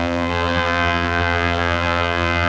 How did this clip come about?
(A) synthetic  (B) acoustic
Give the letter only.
A